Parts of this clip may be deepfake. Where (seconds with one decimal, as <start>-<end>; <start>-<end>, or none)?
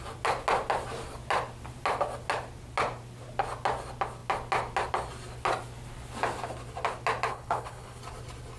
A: 7.3-8.0